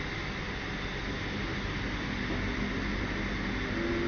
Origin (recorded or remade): recorded